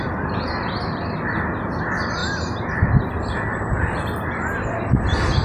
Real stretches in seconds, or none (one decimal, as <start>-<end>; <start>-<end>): 0.0-5.4